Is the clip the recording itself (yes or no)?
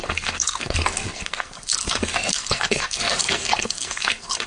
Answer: no